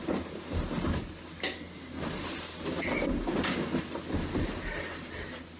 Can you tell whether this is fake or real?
real